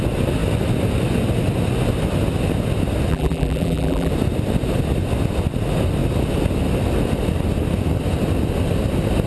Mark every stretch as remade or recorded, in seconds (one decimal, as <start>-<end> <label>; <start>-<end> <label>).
0.0-3.1 recorded; 3.1-4.1 remade; 4.1-9.3 recorded